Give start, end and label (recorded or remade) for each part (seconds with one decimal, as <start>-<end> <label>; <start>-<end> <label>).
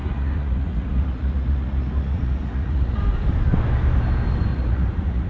0.0-3.0 remade; 3.0-4.5 recorded; 4.5-5.3 remade